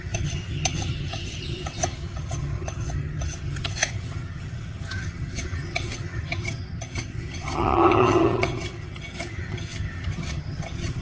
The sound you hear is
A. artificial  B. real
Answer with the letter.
A